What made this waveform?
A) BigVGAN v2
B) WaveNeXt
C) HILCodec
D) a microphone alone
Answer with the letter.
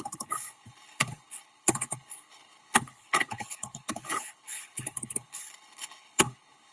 C